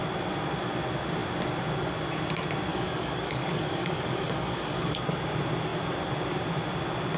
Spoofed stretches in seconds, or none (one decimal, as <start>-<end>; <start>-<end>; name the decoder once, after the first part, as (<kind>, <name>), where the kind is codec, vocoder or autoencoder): 2.7-5.0 (codec, DAC)